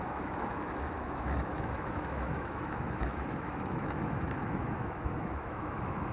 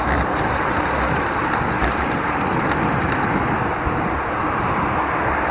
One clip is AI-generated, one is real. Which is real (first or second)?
second